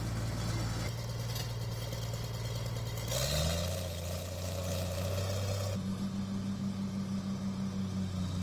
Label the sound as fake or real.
real